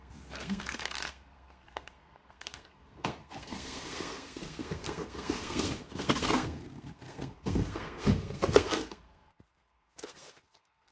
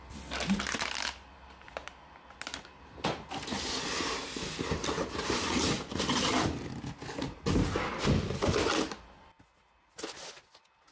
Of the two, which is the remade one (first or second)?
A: first